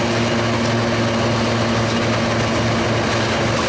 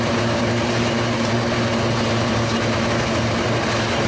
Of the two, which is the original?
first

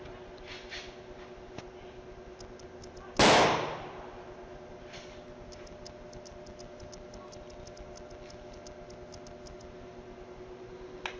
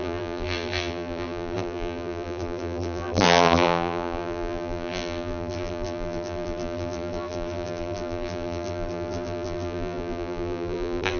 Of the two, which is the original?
first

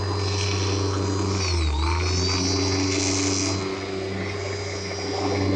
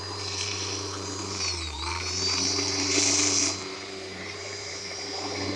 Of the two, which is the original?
first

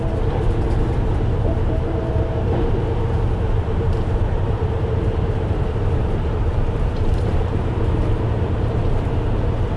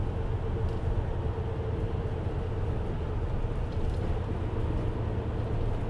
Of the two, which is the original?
second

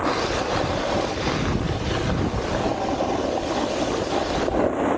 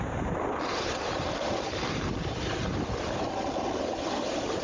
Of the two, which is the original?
first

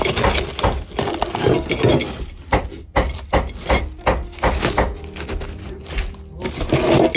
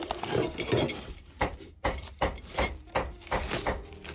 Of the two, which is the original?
first